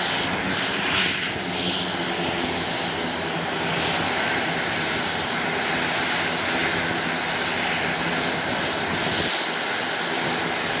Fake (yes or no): no